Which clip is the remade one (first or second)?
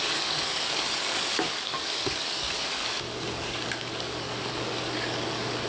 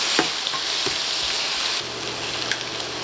first